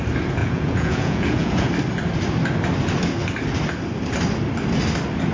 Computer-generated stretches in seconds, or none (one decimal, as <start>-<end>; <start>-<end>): 0.4-1.7